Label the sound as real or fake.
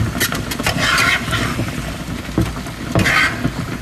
real